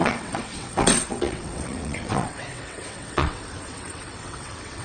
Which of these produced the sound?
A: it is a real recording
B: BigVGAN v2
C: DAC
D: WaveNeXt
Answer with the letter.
D